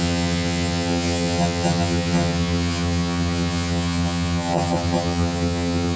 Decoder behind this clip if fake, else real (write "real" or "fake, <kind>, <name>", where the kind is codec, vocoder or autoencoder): fake, vocoder, HiFi-GAN